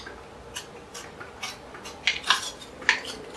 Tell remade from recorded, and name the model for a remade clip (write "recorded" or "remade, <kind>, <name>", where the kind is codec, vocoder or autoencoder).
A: recorded